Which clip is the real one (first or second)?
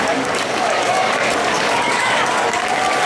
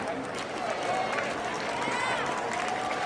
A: second